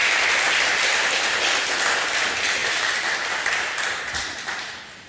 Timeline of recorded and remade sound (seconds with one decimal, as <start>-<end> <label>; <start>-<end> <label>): 0.0-0.6 remade; 0.6-2.6 recorded; 2.6-4.0 remade; 4.0-5.1 recorded